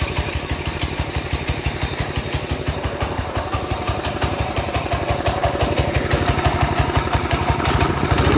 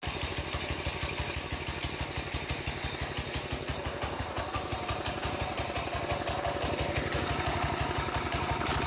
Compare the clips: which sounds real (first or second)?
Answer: second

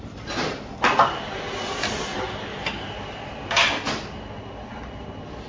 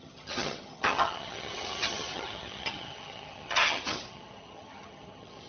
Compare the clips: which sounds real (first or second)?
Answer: first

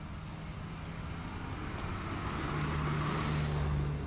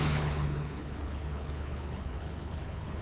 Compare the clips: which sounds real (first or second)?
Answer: first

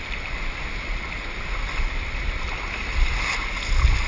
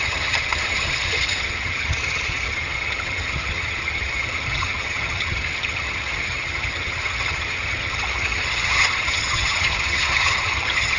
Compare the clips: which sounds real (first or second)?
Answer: first